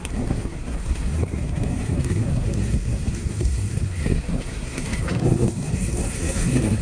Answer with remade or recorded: remade